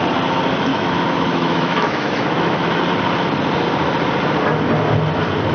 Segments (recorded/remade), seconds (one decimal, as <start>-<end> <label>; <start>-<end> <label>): 0.0-0.7 recorded; 0.7-2.8 remade; 2.8-5.5 recorded